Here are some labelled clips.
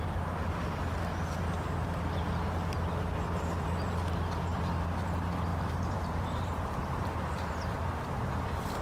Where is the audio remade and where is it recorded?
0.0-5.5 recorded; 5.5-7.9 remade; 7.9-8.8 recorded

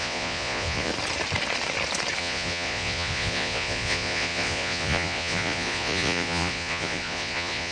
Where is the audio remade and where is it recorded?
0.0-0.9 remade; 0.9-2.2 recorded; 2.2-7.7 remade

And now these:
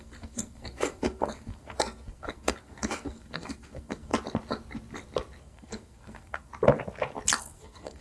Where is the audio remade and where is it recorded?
0.0-4.1 remade; 4.1-5.4 recorded; 5.4-6.5 remade; 6.5-7.4 recorded; 7.4-8.0 remade

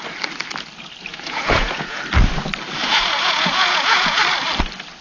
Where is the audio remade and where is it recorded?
0.0-1.1 recorded; 1.1-2.0 remade; 2.0-2.8 recorded; 2.8-4.2 remade; 4.2-5.0 recorded